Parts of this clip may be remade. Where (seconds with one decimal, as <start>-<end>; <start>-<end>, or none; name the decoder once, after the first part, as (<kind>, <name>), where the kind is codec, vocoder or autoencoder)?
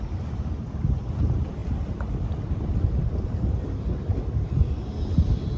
none